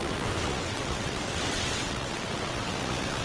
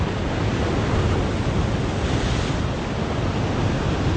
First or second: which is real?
second